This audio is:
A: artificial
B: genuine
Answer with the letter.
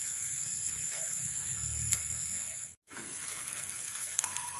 A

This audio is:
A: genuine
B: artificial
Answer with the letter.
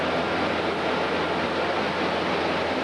A